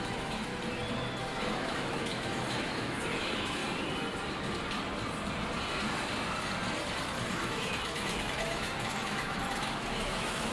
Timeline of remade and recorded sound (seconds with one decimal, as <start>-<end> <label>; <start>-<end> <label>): 0.0-0.5 remade; 0.5-1.2 recorded; 1.2-3.6 remade; 3.6-7.3 recorded; 7.3-10.5 remade